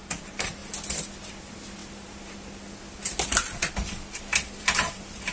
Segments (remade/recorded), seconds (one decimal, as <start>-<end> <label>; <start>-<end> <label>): 0.0-0.6 remade; 0.6-1.4 recorded; 1.4-1.8 remade; 1.8-4.6 recorded; 4.6-5.3 remade